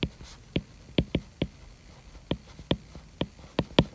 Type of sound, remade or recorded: recorded